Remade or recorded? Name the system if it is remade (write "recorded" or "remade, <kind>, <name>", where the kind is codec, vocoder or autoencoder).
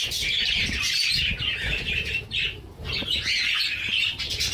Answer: remade, vocoder, BigVGAN v2